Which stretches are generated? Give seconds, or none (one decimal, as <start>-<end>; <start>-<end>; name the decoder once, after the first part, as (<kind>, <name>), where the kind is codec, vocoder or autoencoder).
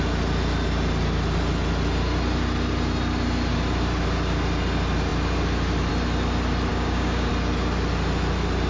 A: 6.7-7.3 (codec, DAC)